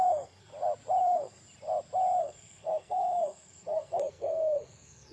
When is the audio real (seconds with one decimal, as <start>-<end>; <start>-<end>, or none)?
0.5-1.0; 1.4-2.2